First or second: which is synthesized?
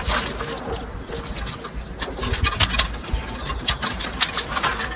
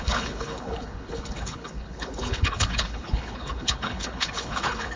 second